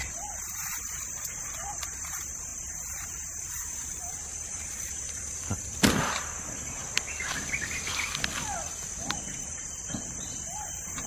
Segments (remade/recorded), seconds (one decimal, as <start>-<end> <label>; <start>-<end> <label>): 0.0-2.5 remade; 2.5-3.5 recorded; 3.5-11.1 remade